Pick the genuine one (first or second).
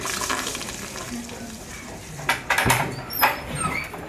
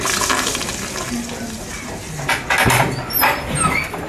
second